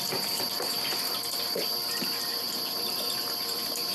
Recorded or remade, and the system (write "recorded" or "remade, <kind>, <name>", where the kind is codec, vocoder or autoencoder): remade, vocoder, BigVGAN v2